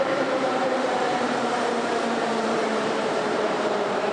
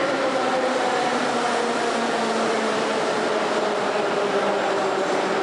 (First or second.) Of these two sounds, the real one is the second